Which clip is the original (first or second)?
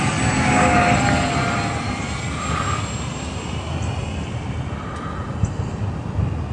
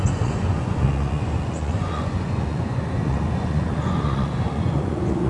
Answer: first